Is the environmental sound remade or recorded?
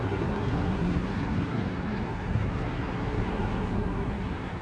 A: remade